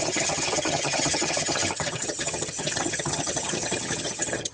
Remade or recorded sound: remade